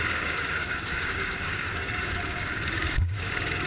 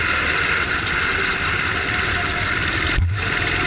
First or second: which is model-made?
first